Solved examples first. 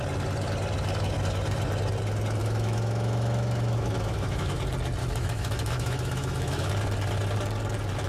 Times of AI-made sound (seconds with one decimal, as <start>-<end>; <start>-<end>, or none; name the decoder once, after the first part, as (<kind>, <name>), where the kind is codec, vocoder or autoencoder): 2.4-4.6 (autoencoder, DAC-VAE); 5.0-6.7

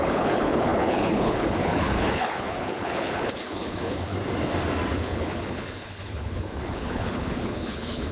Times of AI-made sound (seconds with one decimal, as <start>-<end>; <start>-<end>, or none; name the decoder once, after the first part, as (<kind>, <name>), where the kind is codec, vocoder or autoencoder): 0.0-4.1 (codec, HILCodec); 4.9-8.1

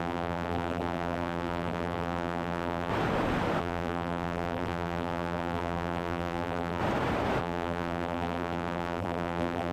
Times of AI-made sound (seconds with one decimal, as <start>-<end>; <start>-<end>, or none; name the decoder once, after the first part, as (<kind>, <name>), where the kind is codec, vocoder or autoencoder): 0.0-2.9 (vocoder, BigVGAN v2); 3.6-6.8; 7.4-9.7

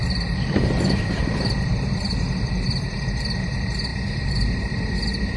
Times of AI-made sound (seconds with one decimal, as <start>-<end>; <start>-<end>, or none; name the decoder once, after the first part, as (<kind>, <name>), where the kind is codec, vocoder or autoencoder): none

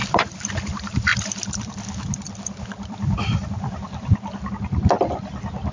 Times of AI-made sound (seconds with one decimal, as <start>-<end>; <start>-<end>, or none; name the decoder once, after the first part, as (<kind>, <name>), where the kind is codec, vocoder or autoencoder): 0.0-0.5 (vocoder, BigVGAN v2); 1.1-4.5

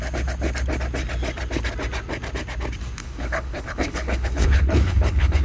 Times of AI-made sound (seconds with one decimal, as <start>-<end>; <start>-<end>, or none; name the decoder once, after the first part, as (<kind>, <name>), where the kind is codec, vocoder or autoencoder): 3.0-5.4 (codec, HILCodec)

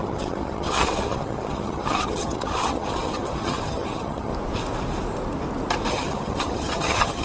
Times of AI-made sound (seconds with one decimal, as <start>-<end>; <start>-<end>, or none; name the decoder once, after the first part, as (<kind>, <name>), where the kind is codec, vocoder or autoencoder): 0.0-4.3 (vocoder, HiFi-GAN); 5.9-7.2